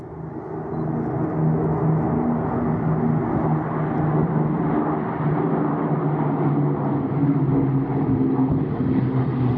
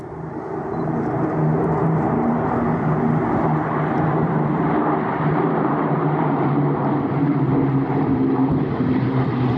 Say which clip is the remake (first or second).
second